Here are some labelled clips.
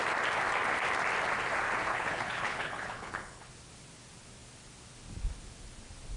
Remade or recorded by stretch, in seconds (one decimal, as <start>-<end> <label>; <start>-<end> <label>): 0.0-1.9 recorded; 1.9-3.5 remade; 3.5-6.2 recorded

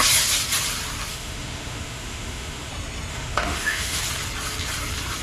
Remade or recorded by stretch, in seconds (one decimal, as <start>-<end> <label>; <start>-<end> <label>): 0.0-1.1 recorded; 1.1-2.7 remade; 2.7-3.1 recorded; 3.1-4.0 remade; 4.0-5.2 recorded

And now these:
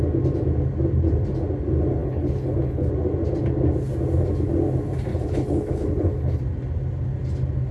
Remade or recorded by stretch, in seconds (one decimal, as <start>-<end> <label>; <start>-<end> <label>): 0.0-2.0 recorded; 2.0-2.9 remade; 2.9-5.1 recorded; 5.1-6.4 remade; 6.4-7.7 recorded